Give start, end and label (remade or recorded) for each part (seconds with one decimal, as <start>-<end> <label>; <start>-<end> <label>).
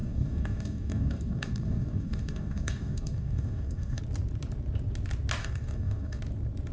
0.0-4.0 remade; 4.0-5.4 recorded; 5.4-6.2 remade; 6.2-6.7 recorded